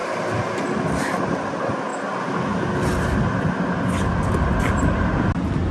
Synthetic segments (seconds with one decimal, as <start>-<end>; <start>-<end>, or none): none